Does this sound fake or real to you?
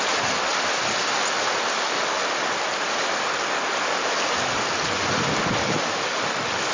real